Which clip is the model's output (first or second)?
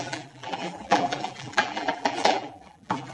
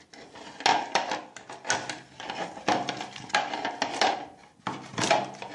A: first